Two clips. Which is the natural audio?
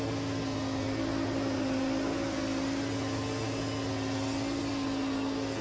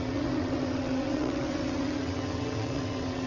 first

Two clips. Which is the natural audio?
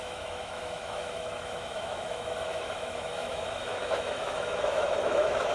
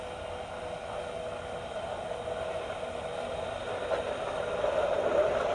second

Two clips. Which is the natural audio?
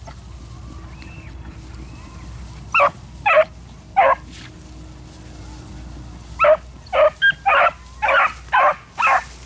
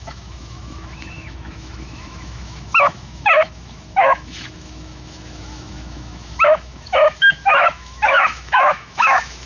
first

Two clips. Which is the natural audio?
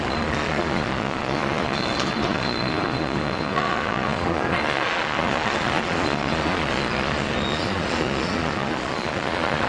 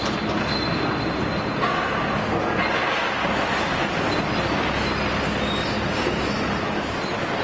second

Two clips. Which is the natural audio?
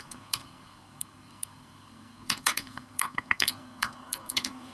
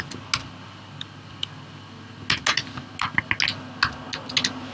second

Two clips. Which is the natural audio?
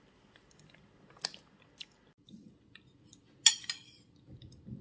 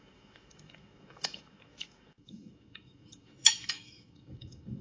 first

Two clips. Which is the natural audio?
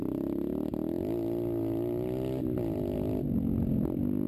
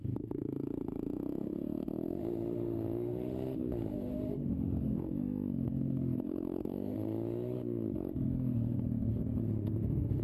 first